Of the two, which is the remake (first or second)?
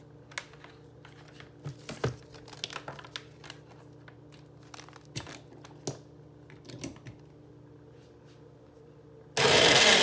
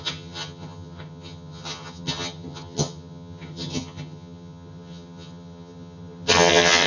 second